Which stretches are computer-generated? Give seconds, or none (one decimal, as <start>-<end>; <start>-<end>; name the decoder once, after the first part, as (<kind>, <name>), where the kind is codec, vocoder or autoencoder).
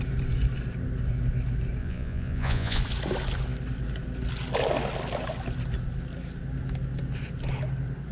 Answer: 1.8-2.8 (vocoder, Vocos)